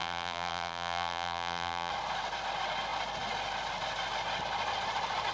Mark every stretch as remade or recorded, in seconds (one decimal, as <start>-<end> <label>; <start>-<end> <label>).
0.0-1.9 remade; 1.9-5.3 recorded